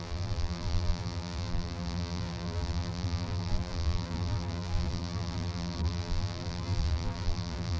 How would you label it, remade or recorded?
remade